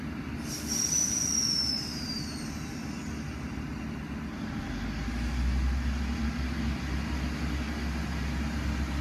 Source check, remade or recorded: recorded